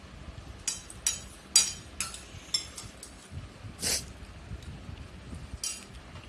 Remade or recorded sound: recorded